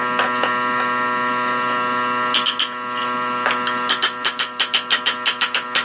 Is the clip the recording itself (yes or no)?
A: yes